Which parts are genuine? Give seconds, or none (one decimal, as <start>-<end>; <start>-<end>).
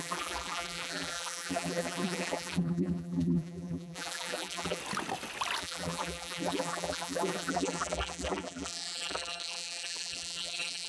4.8-5.6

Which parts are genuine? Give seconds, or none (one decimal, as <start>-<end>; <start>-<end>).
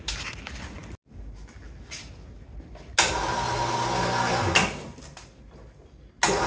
0.0-6.5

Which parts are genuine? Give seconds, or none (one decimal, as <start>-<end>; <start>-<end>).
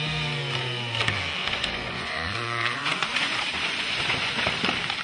0.0-1.4; 4.4-5.0